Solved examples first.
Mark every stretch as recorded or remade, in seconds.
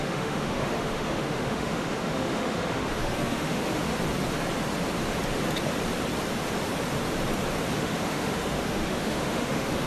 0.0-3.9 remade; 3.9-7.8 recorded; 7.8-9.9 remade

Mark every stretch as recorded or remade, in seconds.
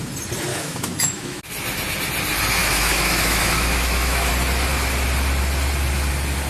0.0-0.5 recorded; 0.5-1.4 remade; 1.4-2.6 recorded; 2.6-4.3 remade; 4.3-6.5 recorded